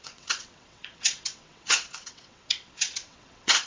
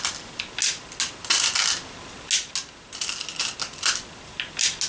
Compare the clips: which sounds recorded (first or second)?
second